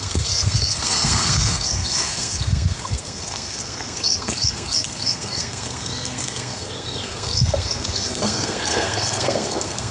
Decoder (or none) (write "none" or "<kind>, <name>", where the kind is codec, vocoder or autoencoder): codec, SNAC